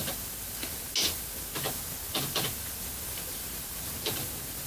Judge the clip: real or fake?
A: real